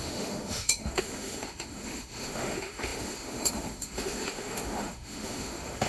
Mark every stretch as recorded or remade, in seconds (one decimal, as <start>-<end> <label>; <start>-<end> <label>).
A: 0.0-5.9 remade